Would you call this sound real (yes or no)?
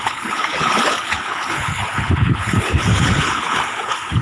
no